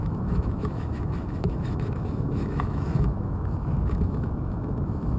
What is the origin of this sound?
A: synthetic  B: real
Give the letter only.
A